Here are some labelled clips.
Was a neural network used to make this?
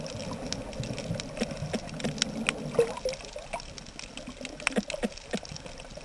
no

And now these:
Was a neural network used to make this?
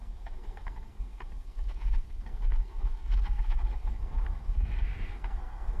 yes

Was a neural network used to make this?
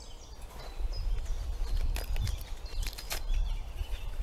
no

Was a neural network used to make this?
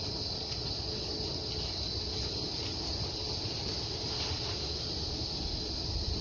no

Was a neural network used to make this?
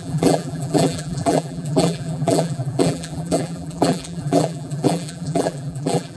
yes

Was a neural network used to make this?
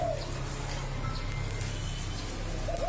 no